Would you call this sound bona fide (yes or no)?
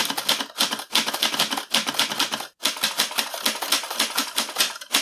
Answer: yes